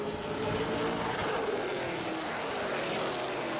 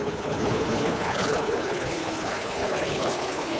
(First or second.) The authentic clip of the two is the first